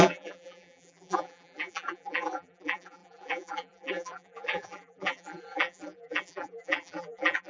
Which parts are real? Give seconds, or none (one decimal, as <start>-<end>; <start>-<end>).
none